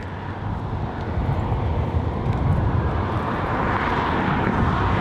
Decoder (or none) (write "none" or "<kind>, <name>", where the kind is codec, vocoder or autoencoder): none